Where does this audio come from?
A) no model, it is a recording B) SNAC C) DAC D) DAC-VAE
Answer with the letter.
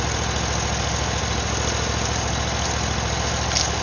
A